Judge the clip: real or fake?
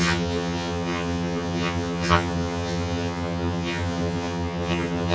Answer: fake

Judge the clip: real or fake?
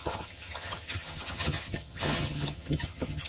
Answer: fake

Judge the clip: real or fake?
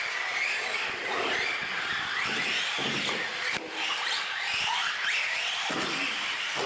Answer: real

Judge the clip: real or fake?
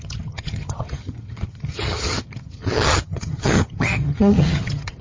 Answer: fake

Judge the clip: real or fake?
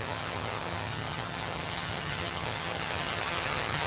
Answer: fake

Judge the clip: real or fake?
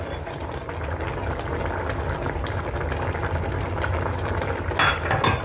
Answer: real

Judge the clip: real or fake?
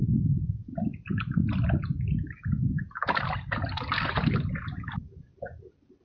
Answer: real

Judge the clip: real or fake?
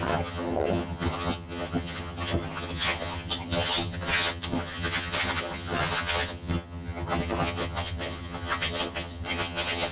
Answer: fake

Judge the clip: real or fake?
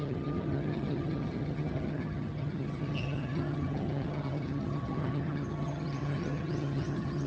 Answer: fake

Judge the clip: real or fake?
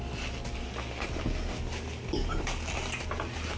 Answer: real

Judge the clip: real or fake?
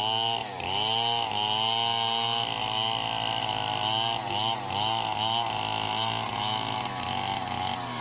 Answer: real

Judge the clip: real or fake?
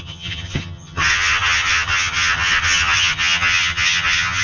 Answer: fake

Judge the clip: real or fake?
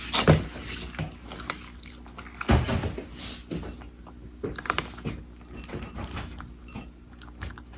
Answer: real